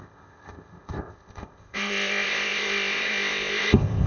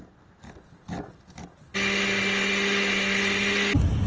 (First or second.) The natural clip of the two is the second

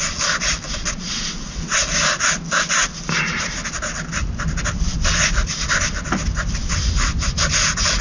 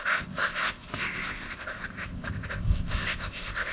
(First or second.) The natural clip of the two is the first